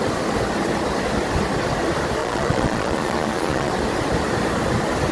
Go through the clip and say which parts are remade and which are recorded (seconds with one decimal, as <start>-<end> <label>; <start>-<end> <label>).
0.0-2.2 recorded; 2.2-3.7 remade; 3.7-5.1 recorded